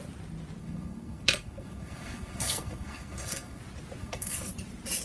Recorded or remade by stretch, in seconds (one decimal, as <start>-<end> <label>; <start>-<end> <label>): 0.0-0.6 recorded; 0.6-3.6 remade; 3.6-4.0 recorded; 4.0-4.5 remade; 4.5-5.0 recorded